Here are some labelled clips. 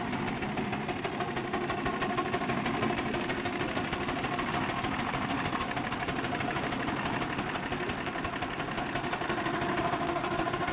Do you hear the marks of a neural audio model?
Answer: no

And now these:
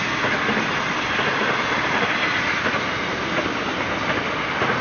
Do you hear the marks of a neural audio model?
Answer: no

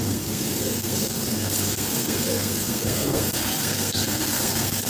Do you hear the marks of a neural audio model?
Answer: yes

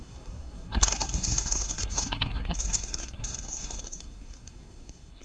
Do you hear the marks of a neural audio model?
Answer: yes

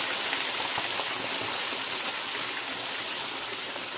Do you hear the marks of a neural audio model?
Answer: no